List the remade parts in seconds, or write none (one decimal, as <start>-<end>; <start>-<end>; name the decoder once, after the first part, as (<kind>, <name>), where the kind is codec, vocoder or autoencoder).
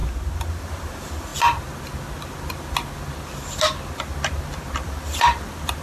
0.0-1.3 (vocoder, BigVGAN v2); 4.8-5.8